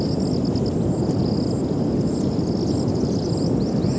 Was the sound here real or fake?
real